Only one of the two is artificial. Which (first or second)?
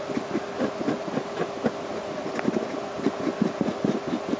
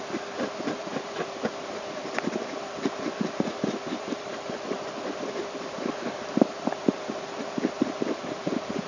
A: second